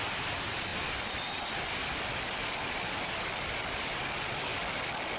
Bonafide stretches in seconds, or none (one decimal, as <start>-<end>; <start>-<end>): 0.7-2.7; 4.5-5.2